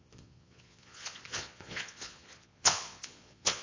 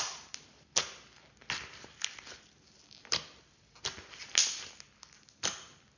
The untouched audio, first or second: second